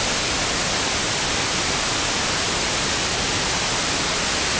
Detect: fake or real real